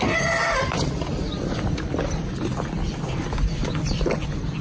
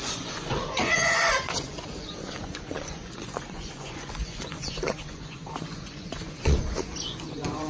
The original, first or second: first